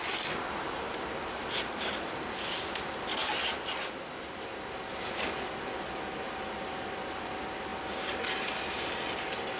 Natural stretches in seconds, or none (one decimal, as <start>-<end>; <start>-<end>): 0.0-9.6